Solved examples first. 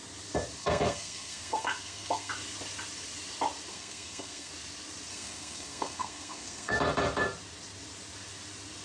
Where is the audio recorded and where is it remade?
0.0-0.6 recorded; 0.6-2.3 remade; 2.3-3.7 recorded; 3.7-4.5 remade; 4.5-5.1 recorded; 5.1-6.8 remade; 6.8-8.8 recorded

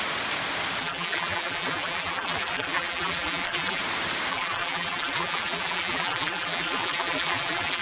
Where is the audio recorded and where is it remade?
0.0-0.8 recorded; 0.8-3.8 remade; 3.8-4.3 recorded; 4.3-7.8 remade